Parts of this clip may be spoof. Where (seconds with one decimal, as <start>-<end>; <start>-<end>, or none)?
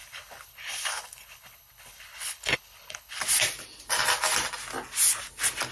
0.0-3.2